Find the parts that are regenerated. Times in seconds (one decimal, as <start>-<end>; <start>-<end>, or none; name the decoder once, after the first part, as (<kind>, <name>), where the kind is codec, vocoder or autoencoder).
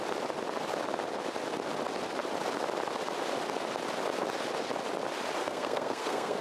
5.4-6.4 (codec, SNAC)